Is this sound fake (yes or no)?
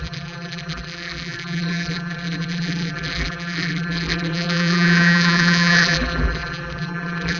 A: yes